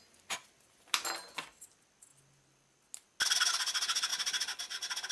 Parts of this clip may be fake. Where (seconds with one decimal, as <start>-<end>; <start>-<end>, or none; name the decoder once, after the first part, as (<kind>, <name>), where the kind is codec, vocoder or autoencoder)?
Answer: none